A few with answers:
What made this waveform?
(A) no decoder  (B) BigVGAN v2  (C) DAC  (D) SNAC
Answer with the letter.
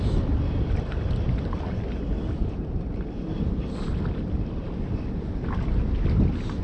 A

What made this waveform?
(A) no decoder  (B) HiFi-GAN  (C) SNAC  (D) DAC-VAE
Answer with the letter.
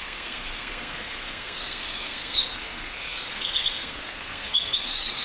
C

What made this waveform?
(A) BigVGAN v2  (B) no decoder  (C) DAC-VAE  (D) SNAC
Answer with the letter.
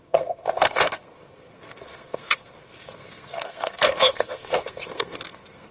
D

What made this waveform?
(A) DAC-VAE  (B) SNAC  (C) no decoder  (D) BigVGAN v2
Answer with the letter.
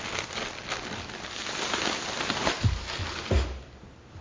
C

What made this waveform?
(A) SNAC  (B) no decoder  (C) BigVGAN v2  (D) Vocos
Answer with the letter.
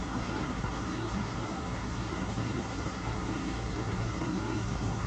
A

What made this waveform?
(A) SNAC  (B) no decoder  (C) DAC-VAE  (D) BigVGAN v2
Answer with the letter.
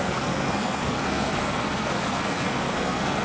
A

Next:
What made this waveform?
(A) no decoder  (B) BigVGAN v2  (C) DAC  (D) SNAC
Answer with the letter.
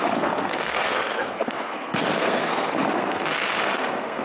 D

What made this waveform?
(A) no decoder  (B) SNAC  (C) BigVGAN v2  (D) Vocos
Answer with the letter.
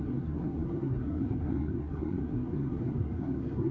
B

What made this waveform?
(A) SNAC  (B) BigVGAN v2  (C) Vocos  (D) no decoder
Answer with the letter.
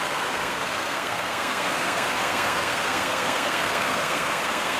A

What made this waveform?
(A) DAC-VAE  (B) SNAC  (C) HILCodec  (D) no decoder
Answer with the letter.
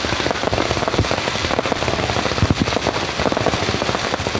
D